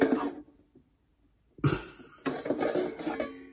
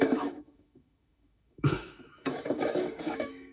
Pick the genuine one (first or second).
first